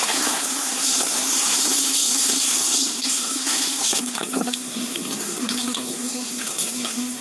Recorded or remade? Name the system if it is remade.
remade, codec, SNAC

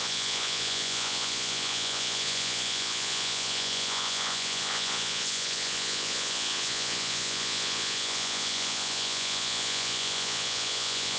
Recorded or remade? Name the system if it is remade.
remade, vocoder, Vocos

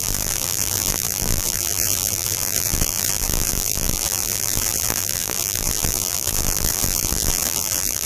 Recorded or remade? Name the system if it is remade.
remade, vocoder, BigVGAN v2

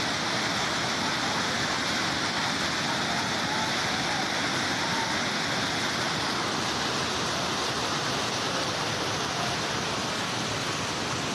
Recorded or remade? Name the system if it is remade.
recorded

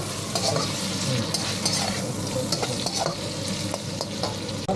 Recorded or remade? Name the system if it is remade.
recorded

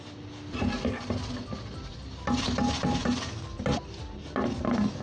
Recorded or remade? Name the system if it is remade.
recorded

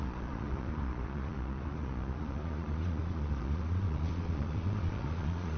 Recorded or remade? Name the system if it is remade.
remade, vocoder, Vocos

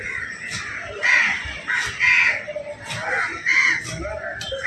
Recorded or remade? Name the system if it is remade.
recorded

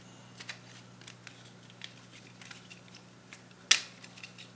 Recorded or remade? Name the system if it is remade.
recorded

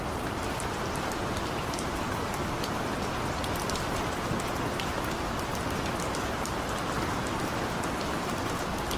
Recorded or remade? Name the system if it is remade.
recorded